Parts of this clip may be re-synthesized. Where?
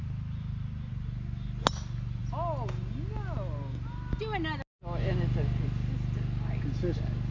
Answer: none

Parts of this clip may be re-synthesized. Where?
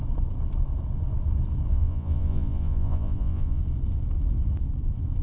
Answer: 1.7-3.6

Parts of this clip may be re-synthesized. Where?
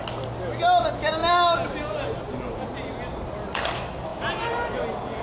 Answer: 4.1-4.8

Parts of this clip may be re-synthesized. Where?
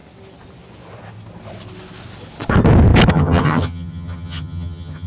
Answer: 3.1-5.1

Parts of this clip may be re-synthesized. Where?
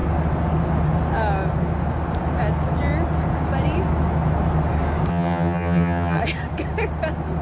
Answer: 5.1-6.2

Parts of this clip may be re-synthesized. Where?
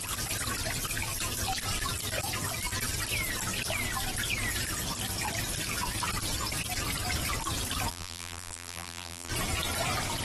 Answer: 7.9-9.3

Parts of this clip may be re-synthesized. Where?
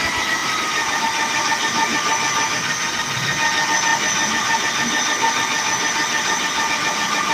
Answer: 0.4-1.0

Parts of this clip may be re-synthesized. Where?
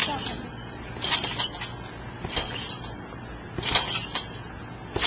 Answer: none